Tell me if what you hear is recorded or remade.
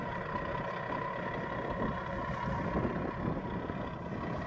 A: recorded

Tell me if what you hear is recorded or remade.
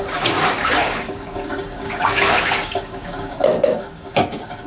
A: remade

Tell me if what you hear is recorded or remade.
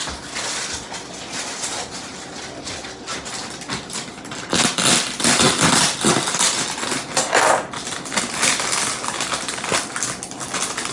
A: recorded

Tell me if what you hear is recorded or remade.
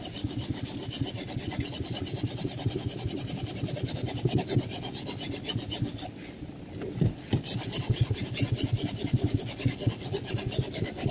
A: recorded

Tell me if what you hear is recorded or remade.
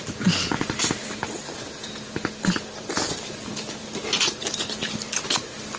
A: recorded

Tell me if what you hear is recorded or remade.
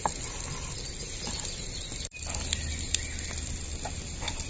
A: recorded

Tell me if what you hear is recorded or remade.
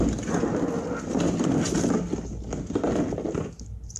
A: recorded